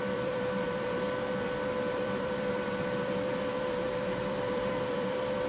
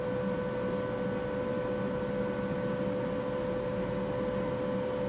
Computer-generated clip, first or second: first